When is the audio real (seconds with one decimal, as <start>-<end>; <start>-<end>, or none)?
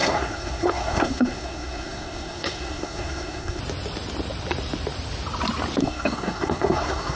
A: 3.6-5.8